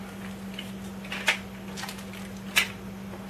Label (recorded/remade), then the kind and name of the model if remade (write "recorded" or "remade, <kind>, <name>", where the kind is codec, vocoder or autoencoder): recorded